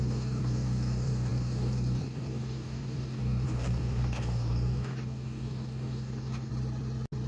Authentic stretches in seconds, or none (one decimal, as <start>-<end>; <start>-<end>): 6.5-7.3